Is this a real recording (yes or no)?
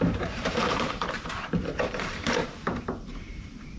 no